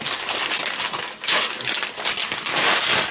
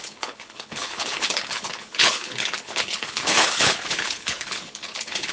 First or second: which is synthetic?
second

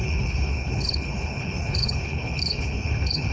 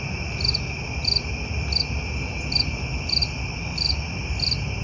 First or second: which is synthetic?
first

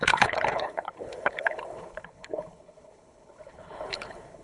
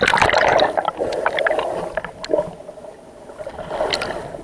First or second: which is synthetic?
first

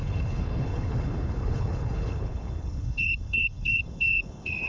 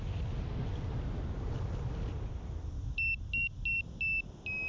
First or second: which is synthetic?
first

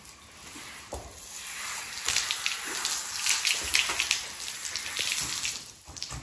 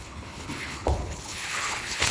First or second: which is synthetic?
second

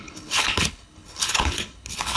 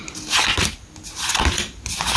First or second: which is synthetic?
first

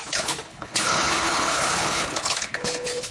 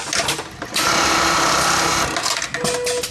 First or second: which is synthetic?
first